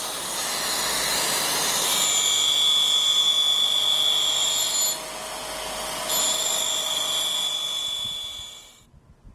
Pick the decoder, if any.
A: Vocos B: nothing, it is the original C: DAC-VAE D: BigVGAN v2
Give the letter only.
B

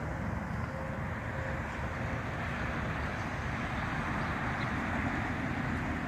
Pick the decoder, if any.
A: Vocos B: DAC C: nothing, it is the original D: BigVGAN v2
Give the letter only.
C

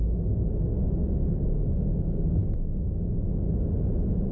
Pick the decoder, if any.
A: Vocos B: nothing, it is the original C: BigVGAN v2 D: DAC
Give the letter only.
B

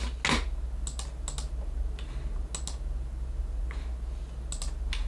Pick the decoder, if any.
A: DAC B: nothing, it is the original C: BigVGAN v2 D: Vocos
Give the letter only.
B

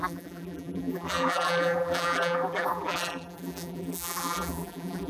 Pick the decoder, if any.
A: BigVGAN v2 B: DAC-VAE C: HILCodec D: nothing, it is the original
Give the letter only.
A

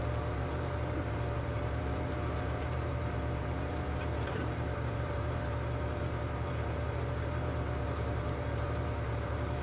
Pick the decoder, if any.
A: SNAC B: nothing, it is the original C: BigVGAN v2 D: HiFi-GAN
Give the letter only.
C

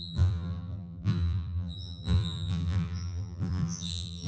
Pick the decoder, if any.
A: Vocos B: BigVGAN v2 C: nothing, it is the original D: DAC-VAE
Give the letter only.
B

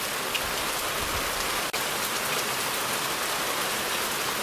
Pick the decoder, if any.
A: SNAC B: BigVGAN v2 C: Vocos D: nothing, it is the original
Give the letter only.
D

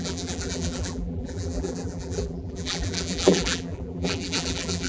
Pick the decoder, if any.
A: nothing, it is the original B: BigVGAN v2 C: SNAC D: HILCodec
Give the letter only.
B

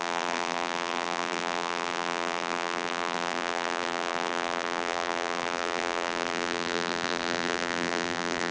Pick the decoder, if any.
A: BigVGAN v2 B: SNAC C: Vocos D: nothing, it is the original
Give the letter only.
A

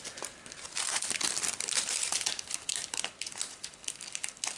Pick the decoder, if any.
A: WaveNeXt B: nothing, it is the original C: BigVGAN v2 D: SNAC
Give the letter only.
B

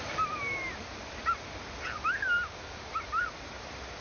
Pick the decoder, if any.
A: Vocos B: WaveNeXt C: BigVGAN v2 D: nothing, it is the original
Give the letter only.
C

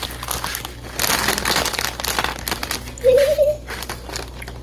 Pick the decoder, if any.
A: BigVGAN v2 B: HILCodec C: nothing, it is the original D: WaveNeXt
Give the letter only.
C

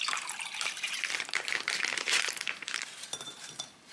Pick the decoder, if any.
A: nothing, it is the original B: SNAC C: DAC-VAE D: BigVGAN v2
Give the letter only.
D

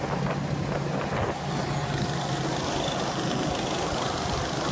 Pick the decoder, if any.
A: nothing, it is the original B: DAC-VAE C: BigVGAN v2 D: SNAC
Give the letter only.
A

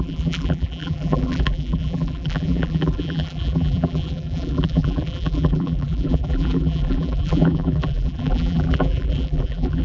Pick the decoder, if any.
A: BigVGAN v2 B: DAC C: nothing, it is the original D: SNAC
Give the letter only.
A